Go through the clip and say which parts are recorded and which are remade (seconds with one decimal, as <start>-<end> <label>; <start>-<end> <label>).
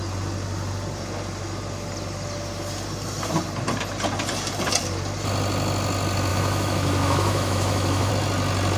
0.0-6.3 recorded; 6.3-8.1 remade; 8.1-8.8 recorded